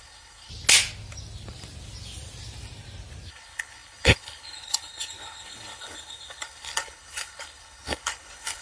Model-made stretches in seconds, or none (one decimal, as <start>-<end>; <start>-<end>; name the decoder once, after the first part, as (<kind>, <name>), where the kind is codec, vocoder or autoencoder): 0.0-0.5 (codec, HILCodec); 3.3-8.6

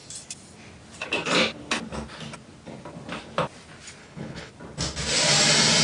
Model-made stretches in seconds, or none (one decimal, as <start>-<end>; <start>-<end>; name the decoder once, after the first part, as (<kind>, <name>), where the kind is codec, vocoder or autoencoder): 4.0-4.5 (codec, HILCodec)